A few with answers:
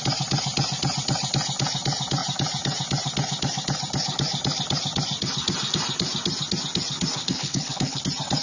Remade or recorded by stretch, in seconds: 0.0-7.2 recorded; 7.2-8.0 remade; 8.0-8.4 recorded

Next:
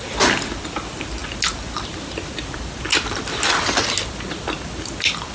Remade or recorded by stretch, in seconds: 0.0-5.3 recorded

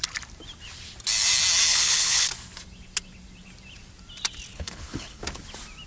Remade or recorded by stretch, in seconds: 0.0-1.7 recorded; 1.7-2.3 remade; 2.3-4.5 recorded; 4.5-5.2 remade; 5.2-5.9 recorded

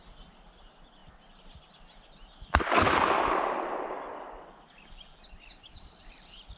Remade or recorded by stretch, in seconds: 0.0-6.6 recorded

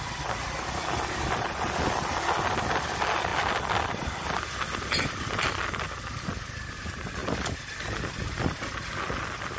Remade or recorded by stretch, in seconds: 0.0-9.6 recorded

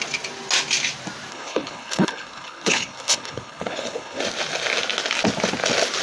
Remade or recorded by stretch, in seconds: 0.0-1.3 recorded; 1.3-4.2 remade; 4.2-6.0 recorded

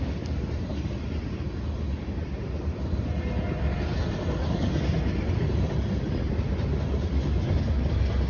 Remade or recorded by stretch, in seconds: 0.0-8.3 recorded